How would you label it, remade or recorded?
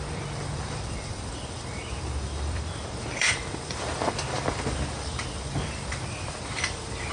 remade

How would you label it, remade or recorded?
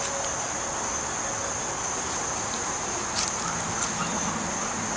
recorded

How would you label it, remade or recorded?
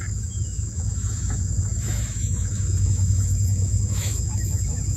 remade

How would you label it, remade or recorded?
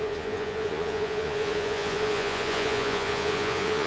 remade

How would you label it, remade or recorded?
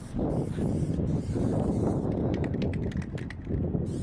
recorded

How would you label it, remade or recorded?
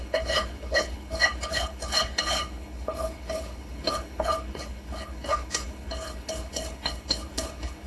remade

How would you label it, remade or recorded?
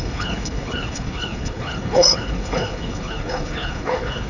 remade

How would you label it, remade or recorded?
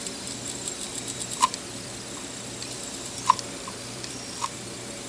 remade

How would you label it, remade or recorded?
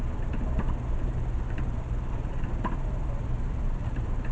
remade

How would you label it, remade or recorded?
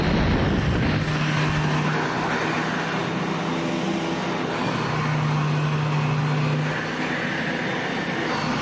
recorded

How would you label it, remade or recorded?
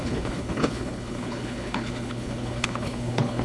remade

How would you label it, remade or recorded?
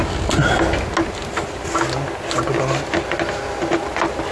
recorded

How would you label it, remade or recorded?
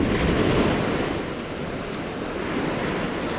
recorded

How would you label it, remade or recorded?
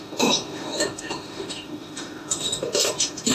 remade